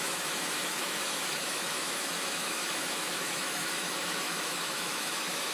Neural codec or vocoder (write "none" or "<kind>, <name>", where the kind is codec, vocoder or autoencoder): autoencoder, DAC-VAE